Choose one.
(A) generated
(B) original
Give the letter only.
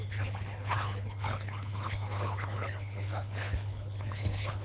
A